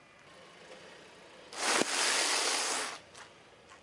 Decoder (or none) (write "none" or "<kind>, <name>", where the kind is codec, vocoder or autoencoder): none